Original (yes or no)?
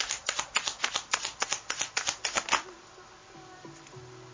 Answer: yes